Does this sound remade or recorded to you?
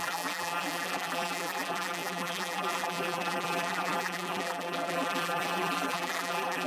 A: remade